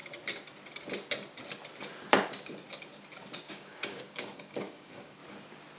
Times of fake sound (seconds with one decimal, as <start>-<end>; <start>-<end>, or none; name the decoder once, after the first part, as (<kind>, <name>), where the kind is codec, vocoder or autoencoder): 3.5-5.2 (codec, DAC)